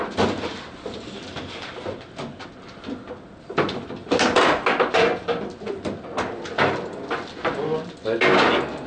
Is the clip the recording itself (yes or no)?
yes